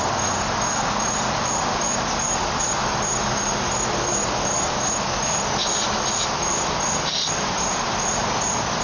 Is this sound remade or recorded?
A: recorded